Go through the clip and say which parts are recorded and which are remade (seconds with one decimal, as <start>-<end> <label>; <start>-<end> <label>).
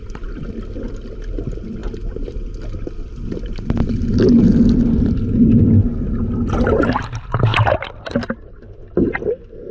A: 0.0-9.7 recorded